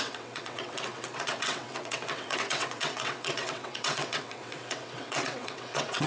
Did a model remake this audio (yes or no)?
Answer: yes